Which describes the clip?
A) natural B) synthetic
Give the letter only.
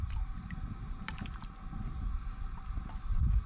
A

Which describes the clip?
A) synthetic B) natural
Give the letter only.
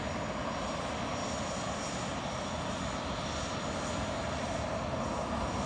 B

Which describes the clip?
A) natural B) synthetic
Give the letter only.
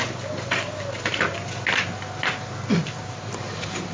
A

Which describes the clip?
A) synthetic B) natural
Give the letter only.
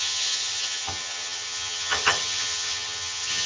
A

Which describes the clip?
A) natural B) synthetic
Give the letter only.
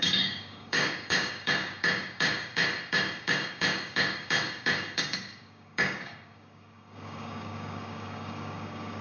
B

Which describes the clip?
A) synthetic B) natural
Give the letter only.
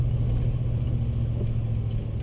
B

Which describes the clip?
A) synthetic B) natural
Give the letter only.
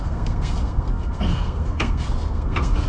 A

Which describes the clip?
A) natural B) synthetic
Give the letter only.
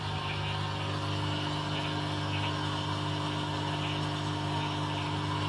A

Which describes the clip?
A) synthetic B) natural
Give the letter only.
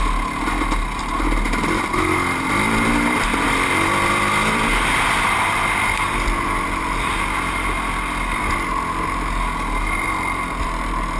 B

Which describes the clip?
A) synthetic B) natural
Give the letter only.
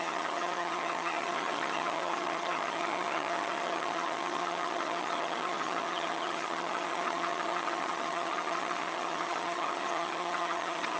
A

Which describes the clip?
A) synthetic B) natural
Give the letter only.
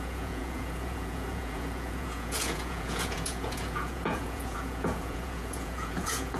A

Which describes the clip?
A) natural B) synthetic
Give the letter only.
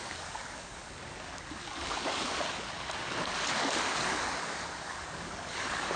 B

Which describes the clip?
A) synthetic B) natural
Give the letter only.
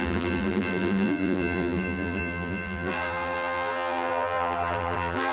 A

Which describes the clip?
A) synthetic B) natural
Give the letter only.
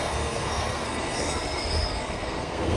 A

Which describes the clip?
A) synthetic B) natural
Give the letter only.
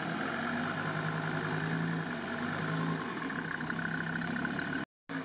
B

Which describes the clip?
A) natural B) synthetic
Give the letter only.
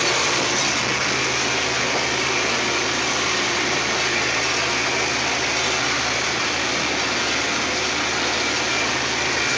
A